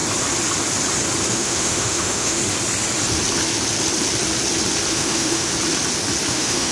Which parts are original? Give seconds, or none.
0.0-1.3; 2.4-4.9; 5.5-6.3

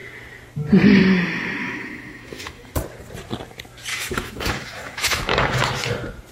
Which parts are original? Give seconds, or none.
0.0-1.6; 2.7-3.9; 5.7-6.3